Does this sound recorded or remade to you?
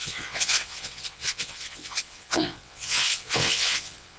remade